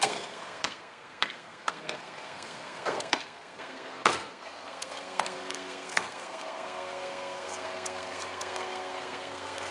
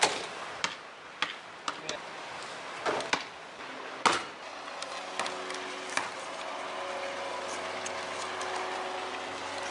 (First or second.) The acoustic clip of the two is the second